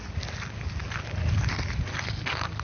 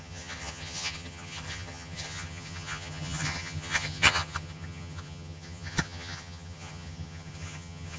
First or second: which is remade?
second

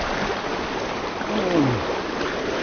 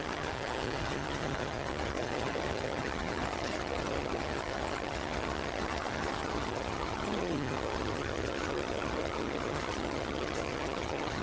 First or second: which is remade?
second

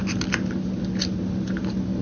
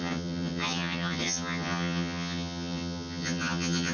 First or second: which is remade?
second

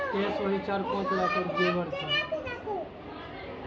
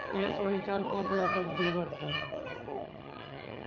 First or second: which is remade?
second